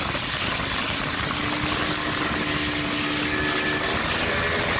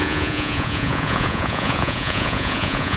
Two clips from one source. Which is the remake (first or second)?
second